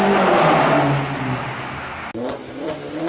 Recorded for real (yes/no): yes